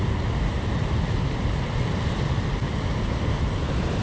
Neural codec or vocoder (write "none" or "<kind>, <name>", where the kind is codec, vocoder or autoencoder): none